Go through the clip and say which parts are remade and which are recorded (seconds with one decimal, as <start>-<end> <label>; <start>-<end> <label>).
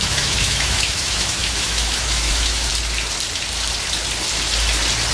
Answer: 0.0-2.7 remade; 2.7-5.1 recorded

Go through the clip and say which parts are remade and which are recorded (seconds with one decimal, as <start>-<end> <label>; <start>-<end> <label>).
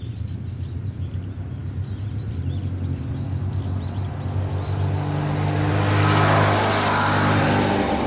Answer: 0.0-8.1 recorded